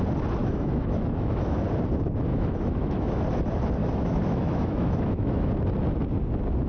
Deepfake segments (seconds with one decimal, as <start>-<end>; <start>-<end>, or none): 0.4-1.6; 2.3-3.2; 3.8-5.5